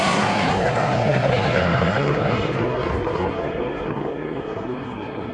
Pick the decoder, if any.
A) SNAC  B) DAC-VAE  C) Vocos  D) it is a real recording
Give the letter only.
A